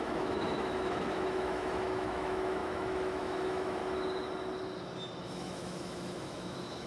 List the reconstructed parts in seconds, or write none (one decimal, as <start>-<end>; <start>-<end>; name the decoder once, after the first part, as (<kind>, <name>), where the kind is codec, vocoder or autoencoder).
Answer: 0.0-3.8 (autoencoder, DAC-VAE); 5.2-6.9